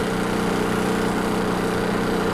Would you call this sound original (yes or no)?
yes